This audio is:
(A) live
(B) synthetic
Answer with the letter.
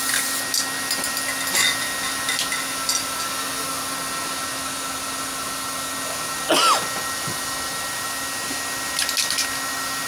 A